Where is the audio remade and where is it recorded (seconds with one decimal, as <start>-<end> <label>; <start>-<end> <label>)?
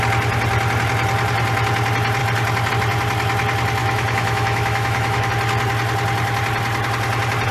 0.0-3.8 recorded; 3.8-5.3 remade; 5.3-7.5 recorded